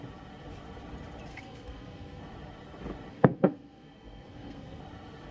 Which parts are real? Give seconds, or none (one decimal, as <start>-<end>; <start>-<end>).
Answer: 0.0-1.3; 2.2-3.1; 4.8-5.3